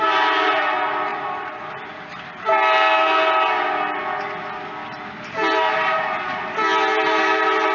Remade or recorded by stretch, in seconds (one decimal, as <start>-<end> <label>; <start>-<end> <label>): 0.0-1.1 recorded; 1.1-1.7 remade; 1.7-7.7 recorded